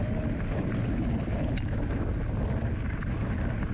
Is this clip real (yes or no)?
yes